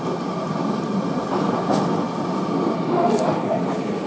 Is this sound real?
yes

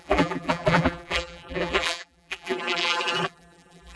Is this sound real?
no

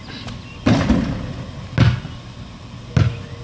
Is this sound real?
yes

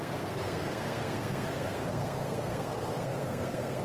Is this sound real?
no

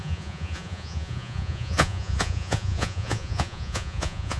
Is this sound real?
no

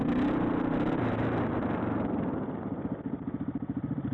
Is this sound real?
yes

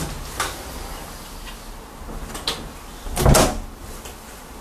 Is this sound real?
yes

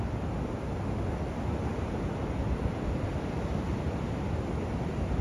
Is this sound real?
yes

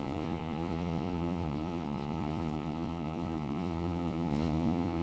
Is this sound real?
no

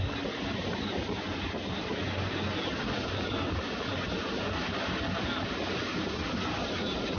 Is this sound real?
yes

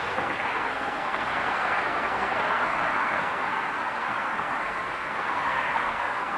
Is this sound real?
no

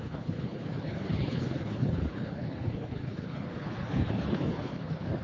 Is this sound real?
no